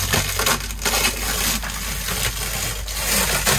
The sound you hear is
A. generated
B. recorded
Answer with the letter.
B